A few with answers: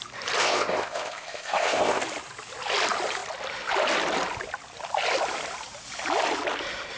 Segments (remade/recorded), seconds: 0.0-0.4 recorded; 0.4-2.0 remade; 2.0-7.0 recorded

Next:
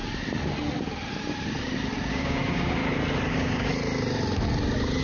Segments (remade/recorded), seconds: 0.0-2.1 recorded; 2.1-2.8 remade; 2.8-3.3 recorded; 3.3-3.7 remade; 3.7-5.0 recorded

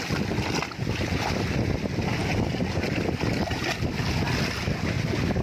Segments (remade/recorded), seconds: 0.0-5.4 recorded

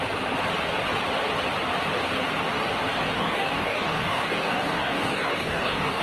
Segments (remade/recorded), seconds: 0.0-3.2 recorded; 3.2-6.0 remade

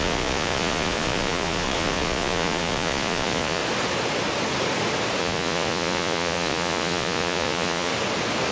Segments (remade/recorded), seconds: 0.0-3.6 remade; 3.6-5.2 recorded; 5.2-7.9 remade; 7.9-8.5 recorded

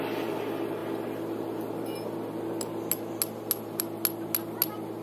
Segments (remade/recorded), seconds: 0.0-5.0 recorded